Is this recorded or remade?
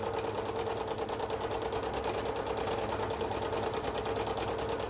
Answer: recorded